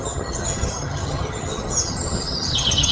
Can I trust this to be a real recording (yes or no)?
no